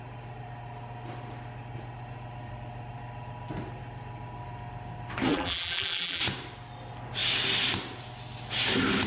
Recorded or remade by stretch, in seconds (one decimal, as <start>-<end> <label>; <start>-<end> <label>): 0.0-5.3 recorded; 5.3-6.2 remade; 6.2-9.1 recorded